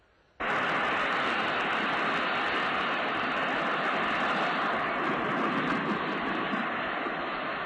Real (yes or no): yes